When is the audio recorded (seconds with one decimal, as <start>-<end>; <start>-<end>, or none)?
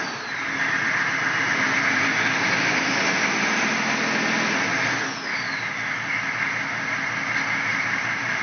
0.0-7.7